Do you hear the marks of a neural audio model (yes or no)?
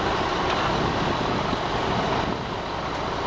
no